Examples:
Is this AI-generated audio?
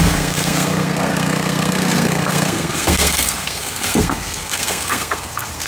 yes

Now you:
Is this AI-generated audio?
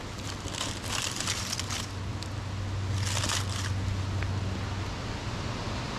no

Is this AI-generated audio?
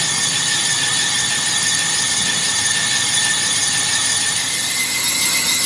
no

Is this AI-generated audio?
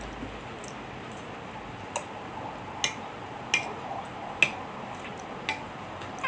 no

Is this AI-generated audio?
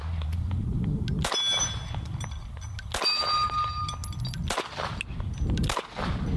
no